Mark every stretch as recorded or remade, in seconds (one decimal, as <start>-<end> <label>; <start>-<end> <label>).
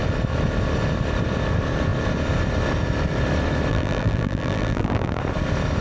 0.0-3.7 recorded; 3.7-5.2 remade; 5.2-5.8 recorded